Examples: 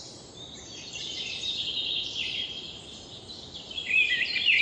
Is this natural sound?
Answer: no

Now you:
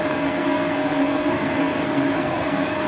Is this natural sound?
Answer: no